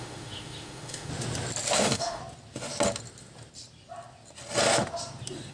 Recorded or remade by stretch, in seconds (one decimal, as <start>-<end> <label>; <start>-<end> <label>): 0.0-1.1 remade; 1.1-1.8 recorded; 1.8-2.2 remade; 2.2-5.5 recorded